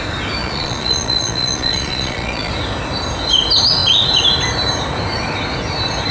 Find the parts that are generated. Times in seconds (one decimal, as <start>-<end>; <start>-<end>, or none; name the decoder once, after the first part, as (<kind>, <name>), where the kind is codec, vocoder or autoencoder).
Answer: 0.4-2.5 (vocoder, Vocos)